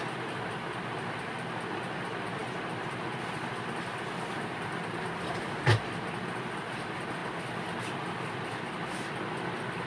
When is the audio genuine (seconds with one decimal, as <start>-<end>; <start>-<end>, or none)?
0.0-9.9